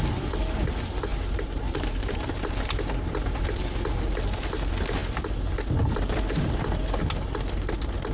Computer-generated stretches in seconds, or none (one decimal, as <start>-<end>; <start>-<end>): 1.1-3.8